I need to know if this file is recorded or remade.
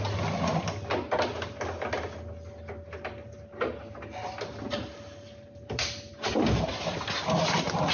recorded